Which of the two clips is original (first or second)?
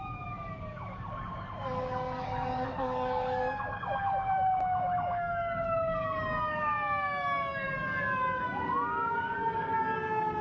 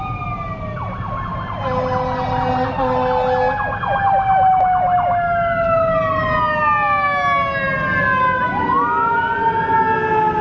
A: second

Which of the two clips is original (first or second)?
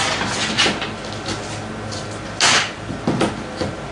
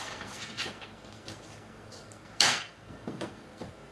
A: first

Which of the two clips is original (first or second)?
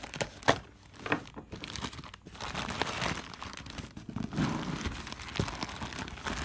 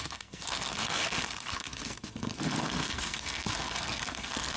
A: first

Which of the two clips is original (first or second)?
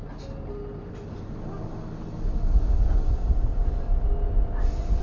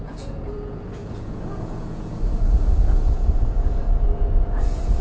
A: first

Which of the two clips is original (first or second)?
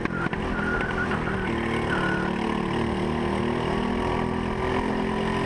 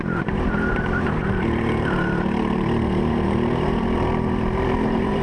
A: first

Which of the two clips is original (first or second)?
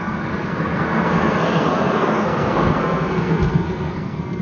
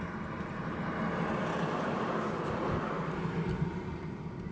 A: second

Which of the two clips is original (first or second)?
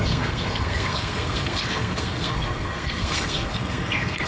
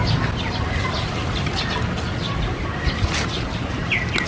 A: second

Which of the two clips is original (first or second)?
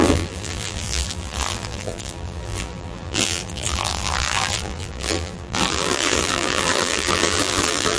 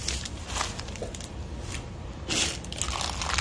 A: second